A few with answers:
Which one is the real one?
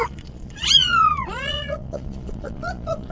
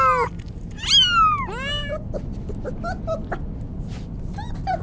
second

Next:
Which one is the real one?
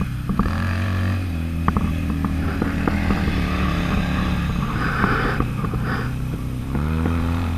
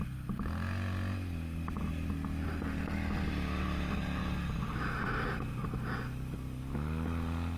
second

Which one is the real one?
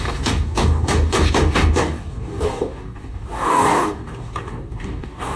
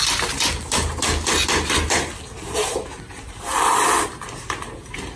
second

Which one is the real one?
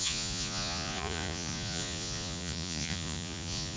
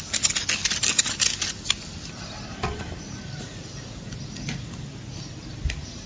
second